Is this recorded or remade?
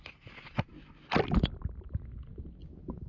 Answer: recorded